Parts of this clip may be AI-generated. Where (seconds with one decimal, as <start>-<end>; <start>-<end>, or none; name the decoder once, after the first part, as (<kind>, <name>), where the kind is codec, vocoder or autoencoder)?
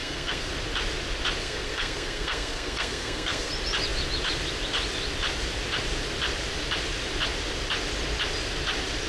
0.0-0.5 (codec, SNAC); 1.4-3.5